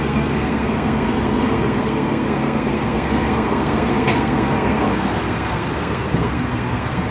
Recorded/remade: remade